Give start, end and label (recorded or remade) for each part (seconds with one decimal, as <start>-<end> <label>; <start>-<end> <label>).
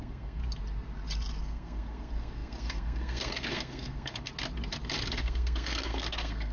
0.0-0.4 remade; 0.4-1.4 recorded; 1.4-4.3 remade; 4.3-5.1 recorded; 5.1-6.5 remade